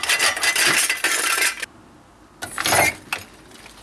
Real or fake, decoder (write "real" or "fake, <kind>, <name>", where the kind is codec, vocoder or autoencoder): real